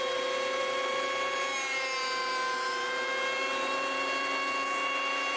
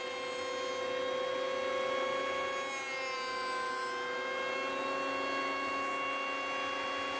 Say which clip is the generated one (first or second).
first